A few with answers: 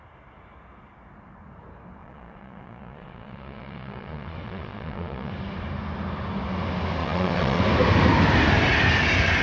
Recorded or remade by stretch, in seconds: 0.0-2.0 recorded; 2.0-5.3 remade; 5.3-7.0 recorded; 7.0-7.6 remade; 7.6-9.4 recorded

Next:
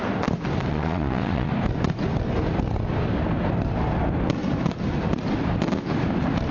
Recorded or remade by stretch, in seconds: 0.0-0.7 recorded; 0.7-1.5 remade; 1.5-6.5 recorded